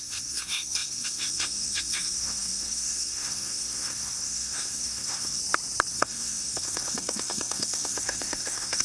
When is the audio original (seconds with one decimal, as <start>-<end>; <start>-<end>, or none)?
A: 5.4-5.9